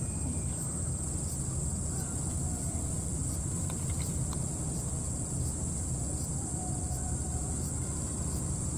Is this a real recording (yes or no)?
no